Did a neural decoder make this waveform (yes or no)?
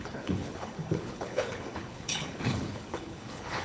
yes